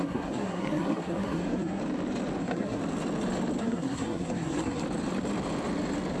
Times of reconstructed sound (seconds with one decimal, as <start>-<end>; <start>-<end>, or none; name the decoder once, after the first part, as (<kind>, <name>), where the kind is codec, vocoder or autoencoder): 0.0-1.8 (codec, SNAC); 2.4-2.8; 3.6-4.8